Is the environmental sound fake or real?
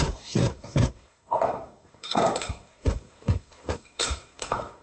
fake